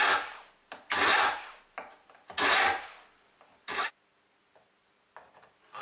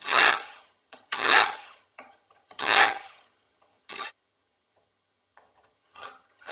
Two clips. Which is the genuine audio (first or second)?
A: first